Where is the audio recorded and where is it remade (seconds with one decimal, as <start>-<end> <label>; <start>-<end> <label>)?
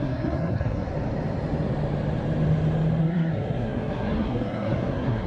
0.0-0.9 remade; 0.9-3.0 recorded; 3.0-5.3 remade